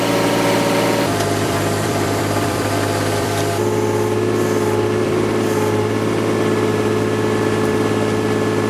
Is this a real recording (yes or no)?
no